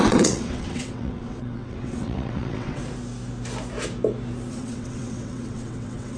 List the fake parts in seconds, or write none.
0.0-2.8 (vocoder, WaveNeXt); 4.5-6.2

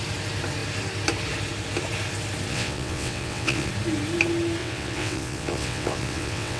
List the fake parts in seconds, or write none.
2.5-3.7 (vocoder, WaveNeXt); 4.6-6.6

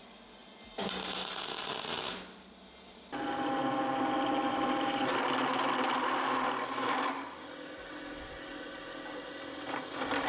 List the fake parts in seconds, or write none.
none

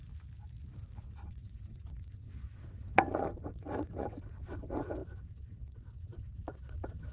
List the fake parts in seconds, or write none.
1.0-7.1 (vocoder, WaveNeXt)

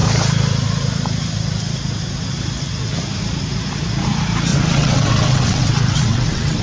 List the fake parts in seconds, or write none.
4.5-6.6 (vocoder, WaveNeXt)

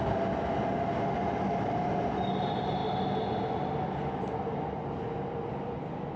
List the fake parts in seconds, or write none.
none

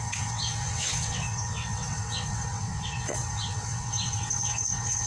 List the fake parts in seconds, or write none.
0.0-5.1 (vocoder, WaveNeXt)

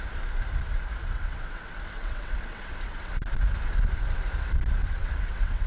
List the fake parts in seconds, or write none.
1.0-3.1 (vocoder, WaveNeXt); 4.8-5.7